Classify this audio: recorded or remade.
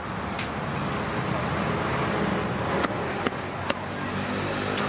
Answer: recorded